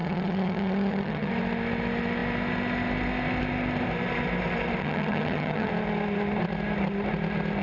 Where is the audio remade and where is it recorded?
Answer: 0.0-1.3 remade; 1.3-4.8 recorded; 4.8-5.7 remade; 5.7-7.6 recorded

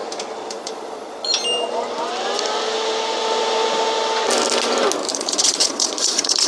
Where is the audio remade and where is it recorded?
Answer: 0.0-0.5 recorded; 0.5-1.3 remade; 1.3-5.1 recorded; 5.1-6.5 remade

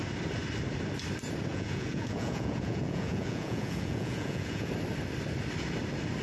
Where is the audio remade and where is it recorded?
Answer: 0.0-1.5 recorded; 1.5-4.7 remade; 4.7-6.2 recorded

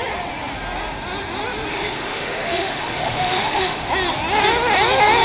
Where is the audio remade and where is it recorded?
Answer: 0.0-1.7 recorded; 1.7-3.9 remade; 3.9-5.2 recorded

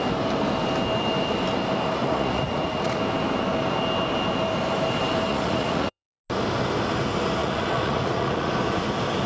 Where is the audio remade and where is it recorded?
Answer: 0.0-2.0 recorded; 2.0-3.0 remade; 3.0-5.3 recorded; 5.3-6.2 remade; 6.2-7.4 recorded; 7.4-8.5 remade; 8.5-9.3 recorded

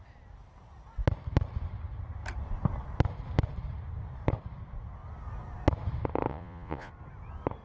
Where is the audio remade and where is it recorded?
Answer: 0.0-6.3 recorded; 6.3-6.9 remade; 6.9-7.6 recorded

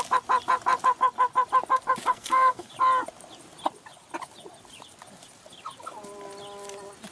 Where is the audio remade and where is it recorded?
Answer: 0.0-2.1 recorded; 2.1-2.7 remade; 2.7-7.1 recorded

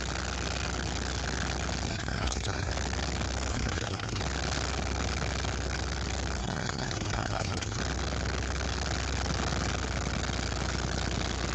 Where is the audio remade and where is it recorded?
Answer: 0.0-1.9 recorded; 1.9-2.7 remade; 2.7-3.5 recorded; 3.5-4.2 remade; 4.2-6.4 recorded; 6.4-7.8 remade; 7.8-11.5 recorded